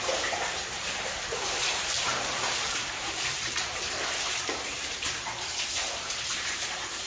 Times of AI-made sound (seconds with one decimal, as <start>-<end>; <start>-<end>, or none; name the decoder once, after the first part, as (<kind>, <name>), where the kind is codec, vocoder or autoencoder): 0.0-7.1 (vocoder, BigVGAN v2)